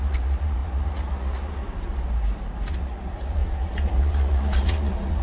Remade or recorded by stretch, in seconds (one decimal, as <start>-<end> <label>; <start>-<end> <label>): 0.0-1.6 remade; 1.6-2.7 recorded; 2.7-5.2 remade